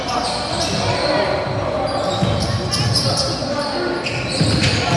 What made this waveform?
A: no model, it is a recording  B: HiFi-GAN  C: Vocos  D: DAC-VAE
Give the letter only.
A